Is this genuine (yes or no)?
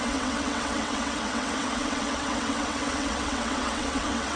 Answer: no